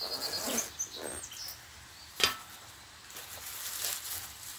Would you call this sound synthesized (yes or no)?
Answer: no